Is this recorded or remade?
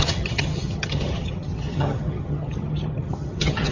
remade